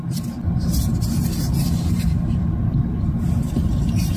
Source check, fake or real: fake